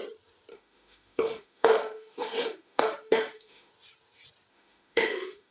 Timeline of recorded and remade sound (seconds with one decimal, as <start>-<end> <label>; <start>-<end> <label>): 0.0-0.5 recorded; 0.5-3.7 remade; 3.7-4.5 recorded; 4.5-5.5 remade

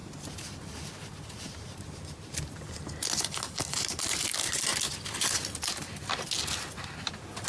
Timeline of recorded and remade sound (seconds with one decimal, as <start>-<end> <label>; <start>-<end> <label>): 0.0-7.5 recorded

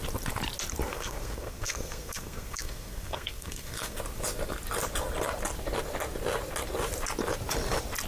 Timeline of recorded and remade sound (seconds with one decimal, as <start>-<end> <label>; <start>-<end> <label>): 0.0-0.9 recorded; 0.9-4.0 remade; 4.0-8.1 recorded

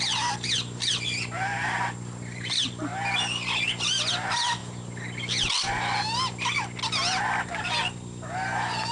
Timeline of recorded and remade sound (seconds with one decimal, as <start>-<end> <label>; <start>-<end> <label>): 0.0-2.9 remade; 2.9-4.1 recorded; 4.1-4.6 remade; 4.6-7.8 recorded; 7.8-8.9 remade

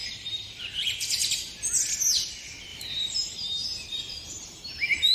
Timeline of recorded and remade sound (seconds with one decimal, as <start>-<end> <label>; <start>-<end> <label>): 0.0-0.6 remade; 0.6-2.7 recorded; 2.7-5.1 remade

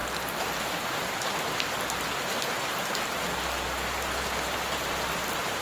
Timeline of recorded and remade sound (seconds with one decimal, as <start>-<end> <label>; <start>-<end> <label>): 0.0-5.6 recorded

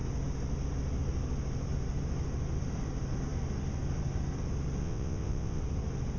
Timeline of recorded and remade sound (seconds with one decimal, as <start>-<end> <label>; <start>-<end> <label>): 0.0-4.8 recorded; 4.8-5.6 remade; 5.6-6.2 recorded